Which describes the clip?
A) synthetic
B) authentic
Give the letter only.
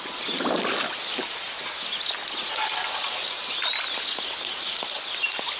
B